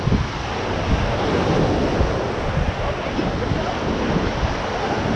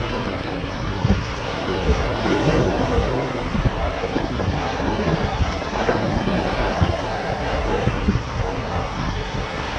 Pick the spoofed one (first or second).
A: second